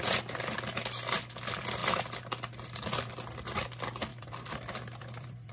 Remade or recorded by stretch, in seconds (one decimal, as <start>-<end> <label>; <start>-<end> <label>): 0.0-4.1 recorded; 4.1-5.5 remade